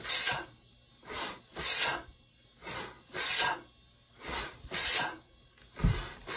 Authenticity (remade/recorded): recorded